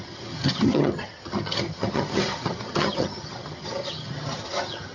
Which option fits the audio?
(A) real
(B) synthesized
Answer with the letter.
B